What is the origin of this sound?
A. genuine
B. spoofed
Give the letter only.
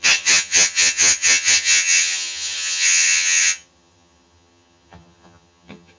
B